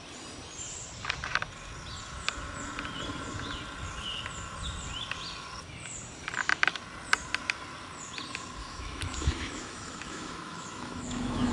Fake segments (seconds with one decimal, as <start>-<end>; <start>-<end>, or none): 8.6-11.5